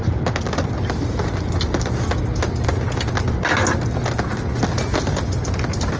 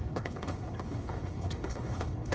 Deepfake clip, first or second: second